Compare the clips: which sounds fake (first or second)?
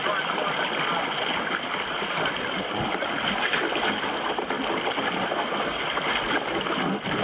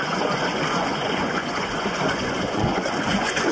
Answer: second